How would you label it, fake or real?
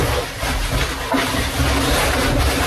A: real